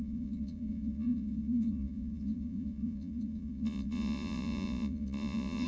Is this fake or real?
fake